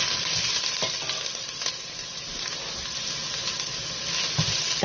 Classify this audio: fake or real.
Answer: real